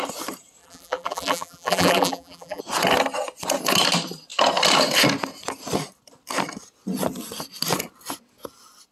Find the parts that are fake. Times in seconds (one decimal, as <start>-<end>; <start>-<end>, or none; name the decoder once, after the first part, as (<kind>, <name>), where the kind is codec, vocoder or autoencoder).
0.6-2.6 (vocoder, BigVGAN v2)